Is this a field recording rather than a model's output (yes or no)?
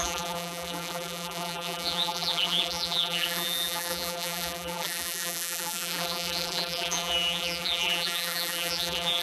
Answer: no